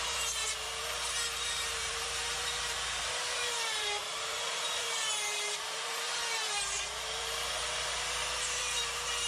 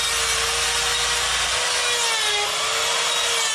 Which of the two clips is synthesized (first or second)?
first